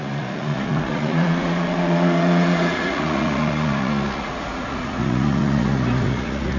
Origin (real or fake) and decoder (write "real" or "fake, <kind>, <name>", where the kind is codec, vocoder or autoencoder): fake, vocoder, Vocos